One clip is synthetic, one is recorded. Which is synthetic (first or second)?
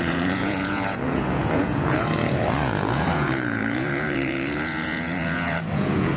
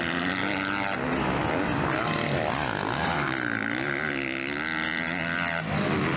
first